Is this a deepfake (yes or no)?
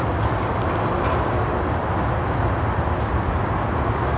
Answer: no